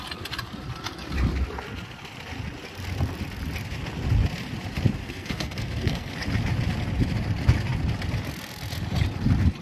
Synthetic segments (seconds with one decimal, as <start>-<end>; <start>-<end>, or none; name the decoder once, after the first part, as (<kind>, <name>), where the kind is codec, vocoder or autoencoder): 5.0-6.1 (codec, SNAC)